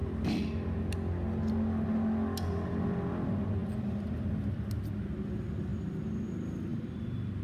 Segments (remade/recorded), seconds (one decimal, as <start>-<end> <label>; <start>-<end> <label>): 0.0-7.4 recorded